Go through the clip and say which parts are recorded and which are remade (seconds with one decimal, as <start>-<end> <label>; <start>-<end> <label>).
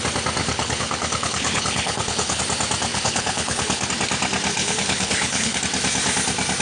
0.0-0.4 recorded; 0.4-2.4 remade; 2.4-2.9 recorded; 2.9-3.9 remade; 3.9-4.5 recorded; 4.5-5.6 remade; 5.6-6.6 recorded